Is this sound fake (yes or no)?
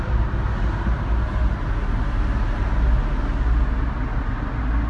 no